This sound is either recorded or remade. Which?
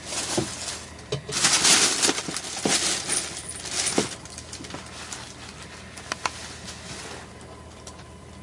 recorded